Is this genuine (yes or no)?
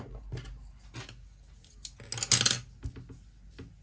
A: yes